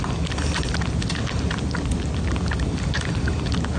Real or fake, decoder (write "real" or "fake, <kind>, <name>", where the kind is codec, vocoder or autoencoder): real